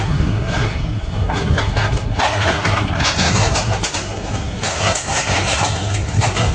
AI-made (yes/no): yes